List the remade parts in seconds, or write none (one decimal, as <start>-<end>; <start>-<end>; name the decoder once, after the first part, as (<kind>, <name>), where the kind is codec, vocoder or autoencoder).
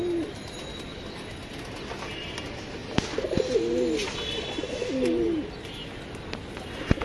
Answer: none